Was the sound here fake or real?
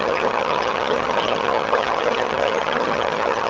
fake